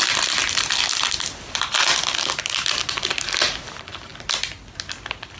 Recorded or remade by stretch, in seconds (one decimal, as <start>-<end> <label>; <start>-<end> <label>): 0.0-5.4 recorded